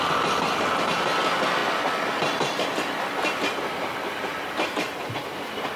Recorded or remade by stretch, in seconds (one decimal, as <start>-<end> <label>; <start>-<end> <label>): 0.0-1.6 recorded; 1.6-5.1 remade; 5.1-5.8 recorded